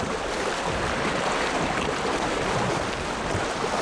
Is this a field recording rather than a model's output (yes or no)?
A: yes